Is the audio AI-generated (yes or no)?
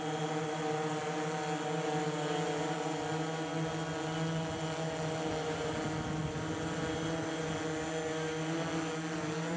no